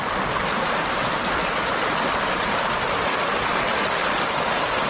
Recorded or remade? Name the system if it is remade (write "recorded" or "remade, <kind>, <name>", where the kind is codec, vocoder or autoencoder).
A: recorded